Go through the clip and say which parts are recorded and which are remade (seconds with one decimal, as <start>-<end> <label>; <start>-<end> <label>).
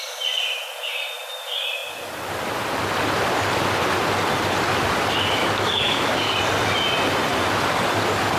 0.0-5.4 recorded; 5.4-6.4 remade; 6.4-8.4 recorded